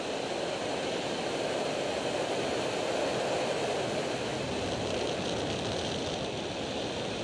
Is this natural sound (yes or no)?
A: yes